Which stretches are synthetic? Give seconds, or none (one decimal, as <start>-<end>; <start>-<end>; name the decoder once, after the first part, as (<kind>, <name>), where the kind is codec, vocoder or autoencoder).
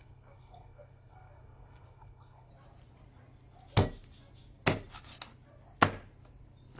0.0-2.5 (codec, SNAC)